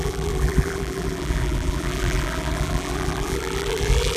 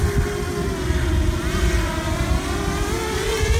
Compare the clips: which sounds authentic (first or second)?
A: second